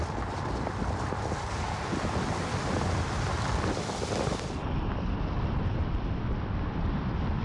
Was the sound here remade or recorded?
recorded